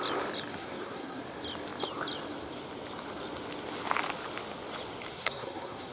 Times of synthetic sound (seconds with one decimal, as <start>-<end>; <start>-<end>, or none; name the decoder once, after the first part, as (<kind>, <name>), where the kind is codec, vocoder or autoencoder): 0.5-1.2 (codec, SNAC); 5.1-5.9